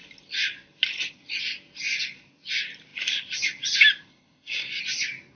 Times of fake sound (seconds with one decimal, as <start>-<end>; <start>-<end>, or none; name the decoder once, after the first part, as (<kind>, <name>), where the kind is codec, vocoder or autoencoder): 4.1-4.8 (codec, SNAC)